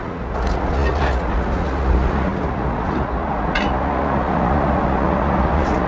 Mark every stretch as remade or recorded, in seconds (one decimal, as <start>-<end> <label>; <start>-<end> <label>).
0.0-5.9 remade